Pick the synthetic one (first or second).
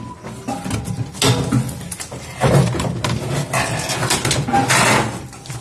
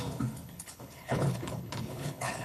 second